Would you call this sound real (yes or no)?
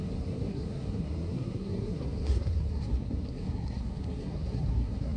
no